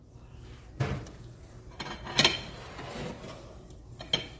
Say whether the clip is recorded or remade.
recorded